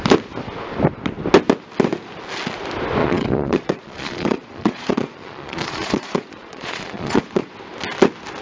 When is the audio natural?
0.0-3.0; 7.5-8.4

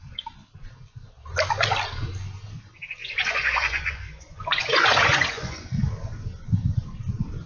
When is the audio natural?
0.0-3.0; 5.8-7.5

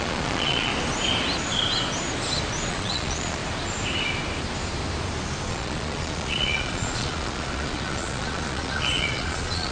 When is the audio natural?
0.7-2.7; 3.4-5.5

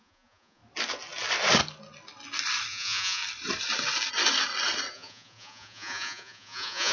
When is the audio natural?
0.6-2.7; 3.2-4.9

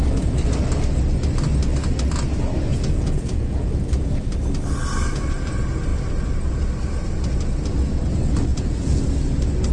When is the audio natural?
0.0-2.7; 3.7-8.5; 9.0-9.7